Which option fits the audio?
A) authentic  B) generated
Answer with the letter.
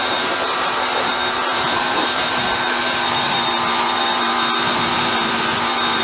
B